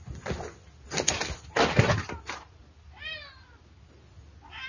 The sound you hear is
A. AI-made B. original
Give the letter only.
B